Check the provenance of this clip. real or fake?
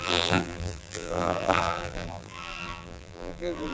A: fake